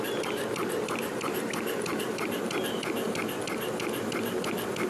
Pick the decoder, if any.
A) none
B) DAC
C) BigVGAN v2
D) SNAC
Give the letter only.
A